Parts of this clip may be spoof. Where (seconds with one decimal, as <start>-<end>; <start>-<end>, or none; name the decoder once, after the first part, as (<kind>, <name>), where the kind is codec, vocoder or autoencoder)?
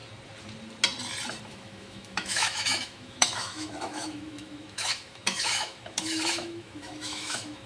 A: 1.4-7.7 (autoencoder, DAC-VAE)